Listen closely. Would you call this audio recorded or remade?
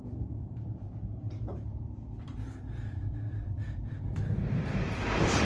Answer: remade